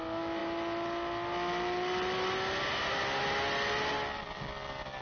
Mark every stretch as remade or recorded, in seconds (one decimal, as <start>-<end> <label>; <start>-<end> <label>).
0.0-5.0 recorded